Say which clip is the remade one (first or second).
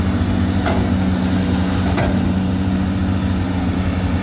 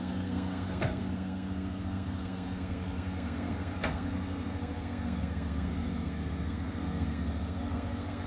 second